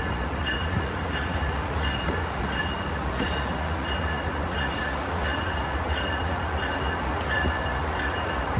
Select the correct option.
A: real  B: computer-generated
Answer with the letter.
B